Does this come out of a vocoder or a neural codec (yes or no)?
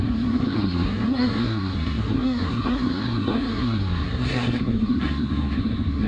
yes